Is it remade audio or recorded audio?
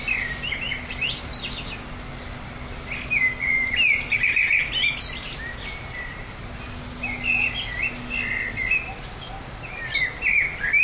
recorded